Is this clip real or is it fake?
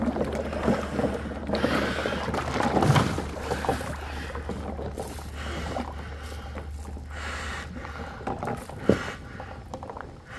real